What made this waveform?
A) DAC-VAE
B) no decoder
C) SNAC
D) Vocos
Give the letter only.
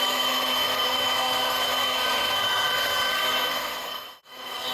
C